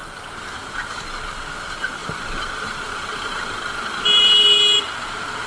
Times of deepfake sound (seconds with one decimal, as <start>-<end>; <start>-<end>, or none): 0.0-1.0; 2.0-5.5